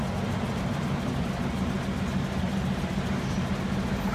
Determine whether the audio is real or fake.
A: real